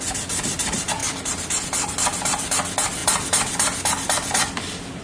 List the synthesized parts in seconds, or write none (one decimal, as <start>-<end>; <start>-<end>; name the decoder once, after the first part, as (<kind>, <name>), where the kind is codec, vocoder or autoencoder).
none